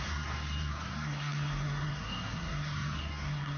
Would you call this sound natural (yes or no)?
no